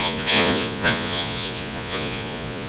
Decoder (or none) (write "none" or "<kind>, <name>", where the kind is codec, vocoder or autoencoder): vocoder, Vocos